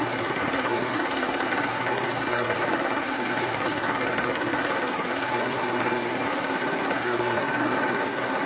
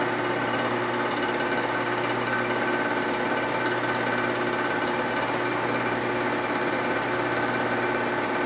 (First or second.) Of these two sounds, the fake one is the first